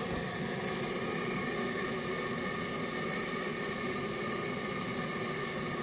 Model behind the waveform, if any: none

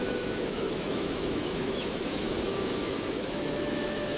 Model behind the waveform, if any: autoencoder, DAC-VAE